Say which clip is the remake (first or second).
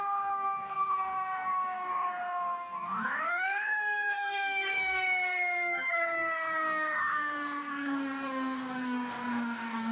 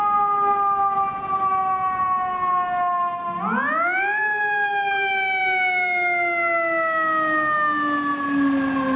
first